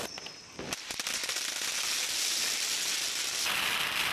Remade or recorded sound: recorded